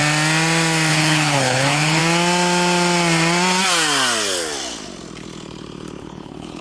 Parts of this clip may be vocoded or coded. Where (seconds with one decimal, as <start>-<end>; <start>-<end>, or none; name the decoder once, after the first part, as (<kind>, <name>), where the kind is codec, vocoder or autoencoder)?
0.9-2.0 (codec, HILCodec); 6.0-6.6